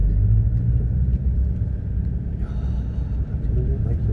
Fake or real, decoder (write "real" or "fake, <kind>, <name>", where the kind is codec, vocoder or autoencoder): real